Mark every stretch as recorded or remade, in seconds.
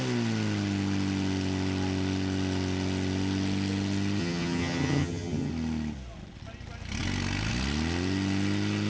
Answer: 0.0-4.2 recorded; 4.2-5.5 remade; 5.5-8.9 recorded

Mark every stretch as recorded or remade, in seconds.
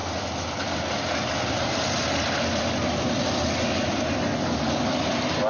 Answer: 0.0-5.5 recorded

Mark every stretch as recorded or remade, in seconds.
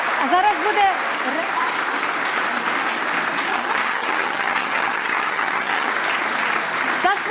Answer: 0.0-3.5 recorded; 3.5-5.9 remade; 5.9-7.3 recorded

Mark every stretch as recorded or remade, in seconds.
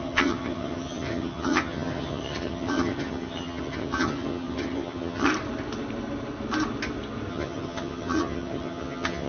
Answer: 0.0-5.3 remade; 5.3-7.3 recorded; 7.3-9.3 remade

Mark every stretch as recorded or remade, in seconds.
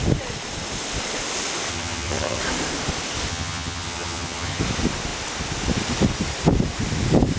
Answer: 0.0-1.7 recorded; 1.7-2.4 remade; 2.4-3.3 recorded; 3.3-4.6 remade; 4.6-7.4 recorded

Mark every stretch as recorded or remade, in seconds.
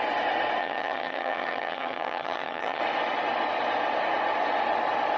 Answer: 0.0-0.6 recorded; 0.6-2.8 remade; 2.8-5.2 recorded